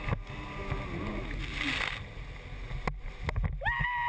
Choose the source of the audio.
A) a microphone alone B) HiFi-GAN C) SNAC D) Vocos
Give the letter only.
A